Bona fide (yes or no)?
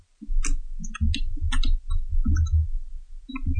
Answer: yes